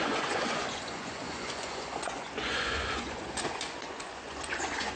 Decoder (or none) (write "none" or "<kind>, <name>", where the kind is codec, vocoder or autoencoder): vocoder, Vocos